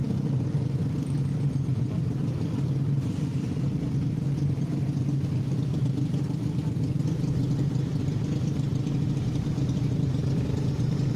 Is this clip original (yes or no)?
no